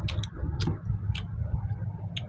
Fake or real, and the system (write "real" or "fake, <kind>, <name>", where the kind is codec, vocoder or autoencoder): real